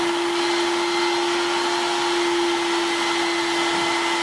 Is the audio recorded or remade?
recorded